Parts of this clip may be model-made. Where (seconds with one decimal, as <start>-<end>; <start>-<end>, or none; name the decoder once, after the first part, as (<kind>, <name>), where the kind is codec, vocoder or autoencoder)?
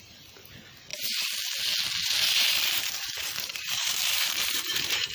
2.0-5.1 (vocoder, BigVGAN v2)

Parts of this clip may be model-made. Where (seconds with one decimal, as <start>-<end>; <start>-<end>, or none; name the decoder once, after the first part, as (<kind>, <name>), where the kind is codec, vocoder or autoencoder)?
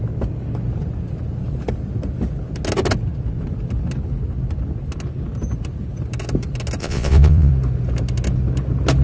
6.8-7.5 (vocoder, Vocos)